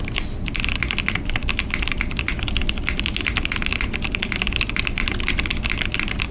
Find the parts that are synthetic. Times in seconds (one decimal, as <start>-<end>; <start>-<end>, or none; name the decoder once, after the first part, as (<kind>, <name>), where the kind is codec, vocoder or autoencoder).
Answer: none